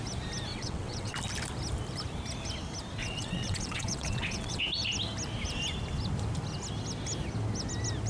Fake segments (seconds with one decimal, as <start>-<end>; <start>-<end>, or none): 0.5-1.1; 3.0-4.6